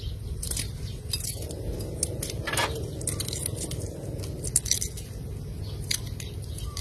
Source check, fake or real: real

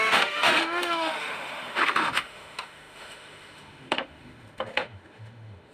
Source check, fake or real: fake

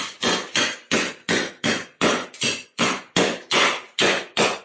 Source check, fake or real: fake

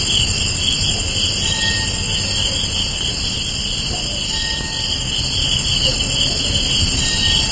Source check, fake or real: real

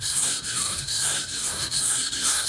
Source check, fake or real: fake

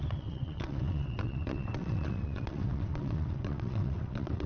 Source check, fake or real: fake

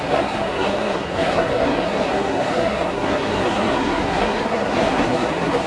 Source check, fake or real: fake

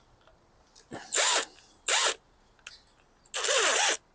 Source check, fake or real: real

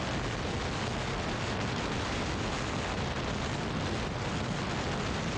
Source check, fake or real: real